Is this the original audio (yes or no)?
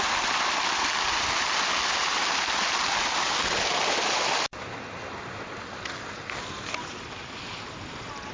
yes